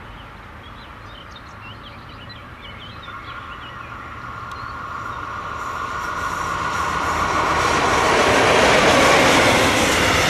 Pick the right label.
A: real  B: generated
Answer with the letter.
A